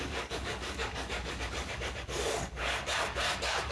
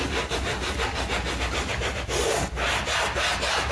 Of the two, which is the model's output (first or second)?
first